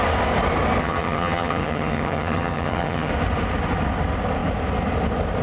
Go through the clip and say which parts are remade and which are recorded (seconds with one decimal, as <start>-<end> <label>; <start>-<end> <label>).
0.0-0.8 recorded; 0.8-3.1 remade; 3.1-5.4 recorded